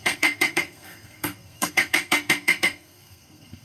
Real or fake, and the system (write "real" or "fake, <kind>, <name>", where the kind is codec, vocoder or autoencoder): fake, codec, SNAC